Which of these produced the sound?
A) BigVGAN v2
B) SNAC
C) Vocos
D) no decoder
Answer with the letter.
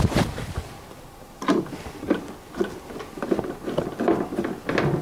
D